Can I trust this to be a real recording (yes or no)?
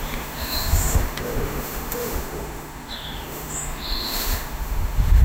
no